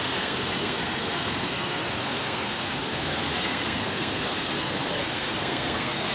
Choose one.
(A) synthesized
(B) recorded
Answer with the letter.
A